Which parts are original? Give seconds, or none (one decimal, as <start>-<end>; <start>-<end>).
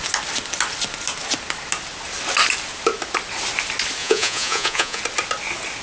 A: 0.0-4.0; 5.0-5.8